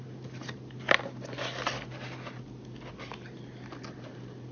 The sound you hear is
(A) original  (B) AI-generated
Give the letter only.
A